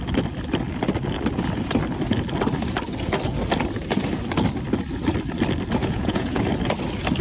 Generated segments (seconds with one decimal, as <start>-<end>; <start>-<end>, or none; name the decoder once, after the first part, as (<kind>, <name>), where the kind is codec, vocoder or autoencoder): 5.8-6.4 (vocoder, Vocos)